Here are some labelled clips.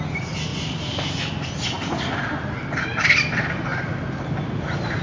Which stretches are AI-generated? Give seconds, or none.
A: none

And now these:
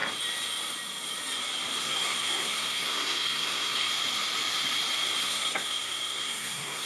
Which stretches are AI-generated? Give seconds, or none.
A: 1.8-3.9; 5.2-6.9

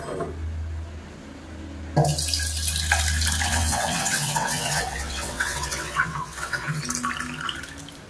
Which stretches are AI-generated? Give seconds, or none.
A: 3.5-6.8